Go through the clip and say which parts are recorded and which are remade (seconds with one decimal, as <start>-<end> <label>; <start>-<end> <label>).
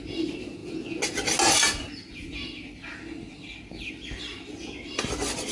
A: 0.0-5.5 recorded